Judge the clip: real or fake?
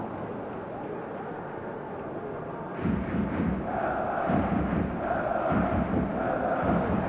real